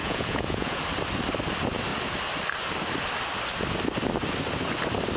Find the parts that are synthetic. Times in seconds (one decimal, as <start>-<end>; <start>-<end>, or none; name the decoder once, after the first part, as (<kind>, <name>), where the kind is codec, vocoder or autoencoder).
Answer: 0.0-0.8 (vocoder, Vocos)